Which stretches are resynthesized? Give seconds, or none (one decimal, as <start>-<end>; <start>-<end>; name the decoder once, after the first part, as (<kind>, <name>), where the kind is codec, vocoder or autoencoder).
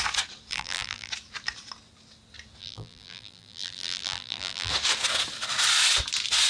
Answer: 0.5-1.1 (vocoder, BigVGAN v2); 2.6-4.7